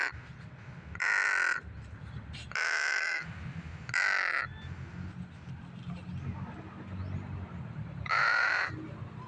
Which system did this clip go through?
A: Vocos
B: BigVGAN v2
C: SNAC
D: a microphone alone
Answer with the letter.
D